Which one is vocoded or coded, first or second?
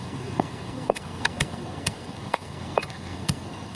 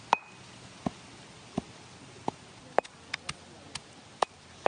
first